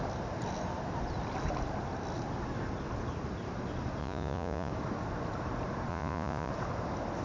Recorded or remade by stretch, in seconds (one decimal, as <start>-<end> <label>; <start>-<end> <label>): 0.0-4.0 recorded; 4.0-4.7 remade; 4.7-5.9 recorded; 5.9-6.5 remade; 6.5-7.2 recorded

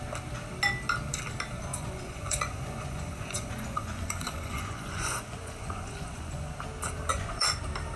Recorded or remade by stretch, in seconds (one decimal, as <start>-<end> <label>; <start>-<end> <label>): 0.0-1.7 recorded; 1.7-6.5 remade; 6.5-7.1 recorded; 7.1-7.6 remade; 7.6-8.0 recorded

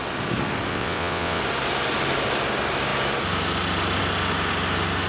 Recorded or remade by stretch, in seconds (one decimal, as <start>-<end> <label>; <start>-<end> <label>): 0.0-0.7 recorded; 0.7-1.4 remade; 1.4-5.1 recorded

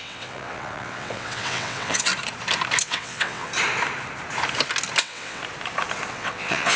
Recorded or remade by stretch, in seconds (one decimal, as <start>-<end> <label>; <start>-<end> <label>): 0.0-2.1 remade; 2.1-2.8 recorded; 2.8-3.5 remade; 3.5-5.0 recorded; 5.0-5.4 remade; 5.4-6.1 recorded; 6.1-6.8 remade

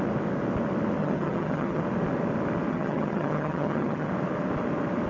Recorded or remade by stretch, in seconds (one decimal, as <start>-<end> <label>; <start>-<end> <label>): 0.0-1.0 recorded; 1.0-1.8 remade; 1.8-2.7 recorded; 2.7-4.1 remade; 4.1-5.1 recorded

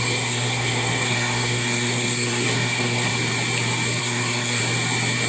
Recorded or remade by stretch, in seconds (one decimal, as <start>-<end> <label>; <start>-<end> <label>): 0.0-3.1 remade; 3.1-4.0 recorded; 4.0-4.6 remade; 4.6-5.3 recorded

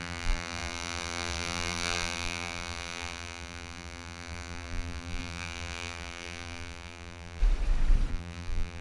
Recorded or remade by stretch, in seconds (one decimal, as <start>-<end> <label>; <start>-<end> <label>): 0.0-7.4 remade; 7.4-8.1 recorded; 8.1-8.8 remade

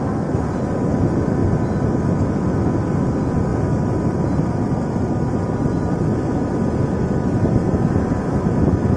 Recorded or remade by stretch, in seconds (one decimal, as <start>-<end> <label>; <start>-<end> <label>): 0.0-1.4 recorded; 1.4-2.0 remade; 2.0-3.5 recorded; 3.5-8.5 remade; 8.5-9.0 recorded